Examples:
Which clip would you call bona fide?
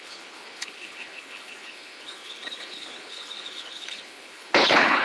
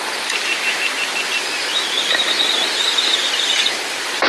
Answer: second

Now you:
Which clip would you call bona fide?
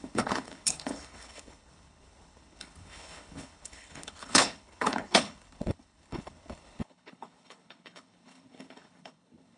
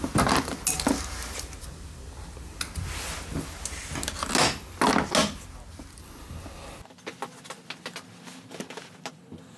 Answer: second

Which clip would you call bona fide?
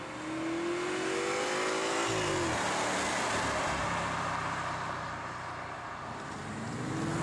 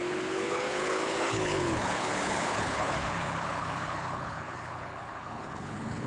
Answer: first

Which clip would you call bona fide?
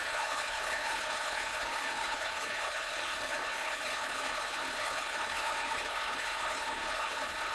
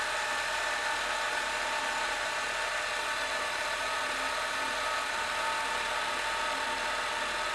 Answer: second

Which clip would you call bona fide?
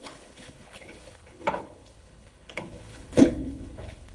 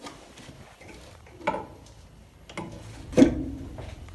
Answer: second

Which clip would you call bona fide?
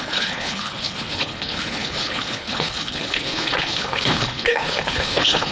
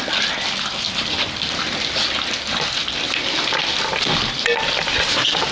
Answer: second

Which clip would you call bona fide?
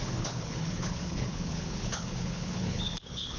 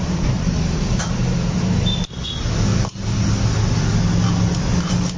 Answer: second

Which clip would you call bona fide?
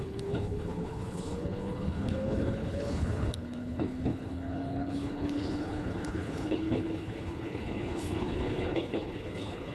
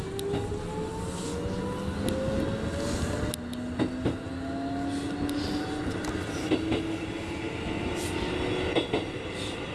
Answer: second